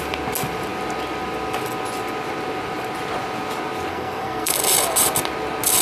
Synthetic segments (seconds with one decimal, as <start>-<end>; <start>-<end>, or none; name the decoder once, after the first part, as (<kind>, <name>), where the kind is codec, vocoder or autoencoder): 3.9-4.5 (codec, SNAC)